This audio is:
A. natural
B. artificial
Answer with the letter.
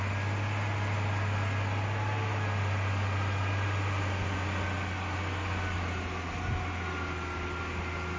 A